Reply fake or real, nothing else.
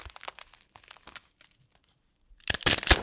real